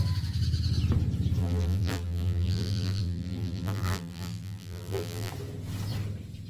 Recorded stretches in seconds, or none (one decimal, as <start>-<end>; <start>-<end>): 0.0-1.4; 5.3-6.5